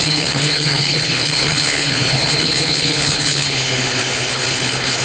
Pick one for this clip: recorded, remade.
remade